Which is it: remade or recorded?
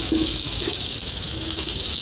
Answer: remade